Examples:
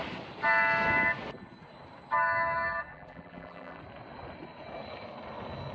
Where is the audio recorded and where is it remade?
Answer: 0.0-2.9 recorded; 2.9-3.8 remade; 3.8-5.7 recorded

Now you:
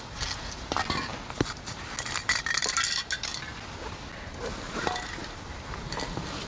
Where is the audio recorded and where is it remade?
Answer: 0.0-6.5 recorded

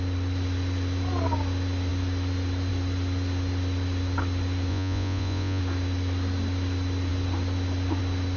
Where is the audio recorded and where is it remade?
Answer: 0.0-4.7 recorded; 4.7-5.6 remade; 5.6-8.4 recorded